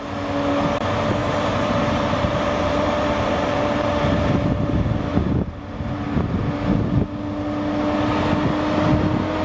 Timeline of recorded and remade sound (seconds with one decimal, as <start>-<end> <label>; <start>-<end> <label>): 0.0-1.2 recorded; 1.2-5.3 remade; 5.3-9.4 recorded